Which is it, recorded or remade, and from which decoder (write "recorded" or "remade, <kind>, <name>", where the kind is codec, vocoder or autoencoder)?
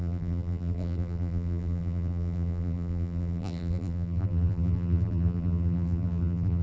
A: remade, vocoder, BigVGAN v2